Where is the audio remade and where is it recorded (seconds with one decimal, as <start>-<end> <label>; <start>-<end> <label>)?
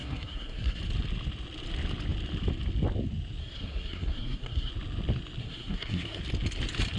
0.0-0.8 remade; 0.8-3.4 recorded; 3.4-4.7 remade; 4.7-5.4 recorded; 5.4-6.2 remade; 6.2-7.0 recorded